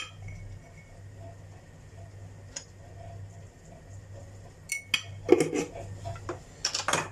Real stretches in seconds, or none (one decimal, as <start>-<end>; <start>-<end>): 0.0-4.2; 4.7-7.1